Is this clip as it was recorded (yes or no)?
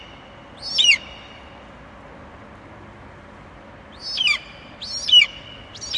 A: yes